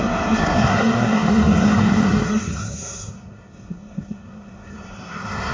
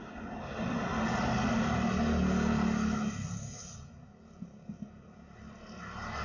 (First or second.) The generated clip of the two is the first